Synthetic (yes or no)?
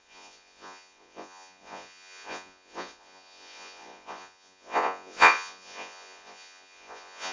yes